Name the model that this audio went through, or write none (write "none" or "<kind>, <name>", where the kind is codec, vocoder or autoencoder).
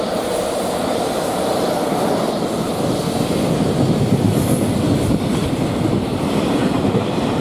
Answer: none